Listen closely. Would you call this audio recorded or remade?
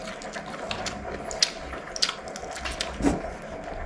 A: recorded